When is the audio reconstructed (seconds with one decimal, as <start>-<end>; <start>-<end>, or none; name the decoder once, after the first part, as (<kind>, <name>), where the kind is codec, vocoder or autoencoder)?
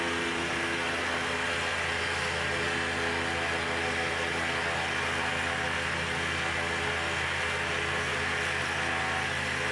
none